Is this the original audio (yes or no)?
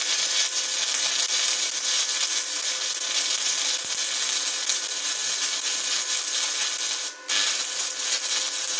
yes